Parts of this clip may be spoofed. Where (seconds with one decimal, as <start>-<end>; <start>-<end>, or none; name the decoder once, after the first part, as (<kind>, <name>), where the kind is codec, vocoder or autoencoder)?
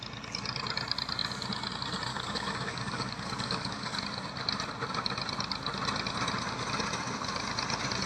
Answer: 2.1-4.0 (codec, DAC)